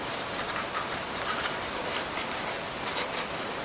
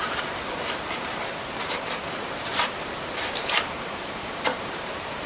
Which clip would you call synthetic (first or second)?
second